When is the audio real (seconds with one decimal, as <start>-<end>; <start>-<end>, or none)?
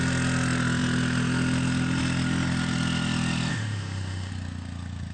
0.0-3.5; 4.3-5.1